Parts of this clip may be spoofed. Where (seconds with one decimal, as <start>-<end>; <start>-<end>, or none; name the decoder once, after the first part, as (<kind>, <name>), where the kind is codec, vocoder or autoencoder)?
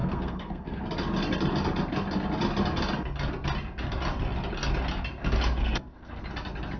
0.0-0.8 (codec, SNAC); 5.6-6.2